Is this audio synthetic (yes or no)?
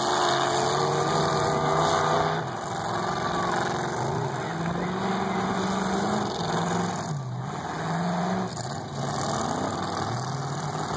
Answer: no